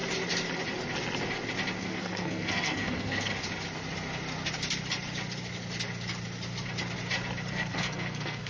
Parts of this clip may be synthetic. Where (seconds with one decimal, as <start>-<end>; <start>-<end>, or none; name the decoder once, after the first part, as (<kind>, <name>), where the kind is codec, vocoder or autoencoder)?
1.8-3.3 (codec, SNAC); 7.5-8.5